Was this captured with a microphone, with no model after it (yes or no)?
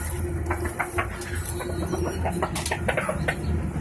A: yes